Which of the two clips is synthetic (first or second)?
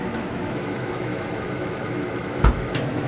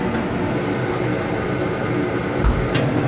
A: first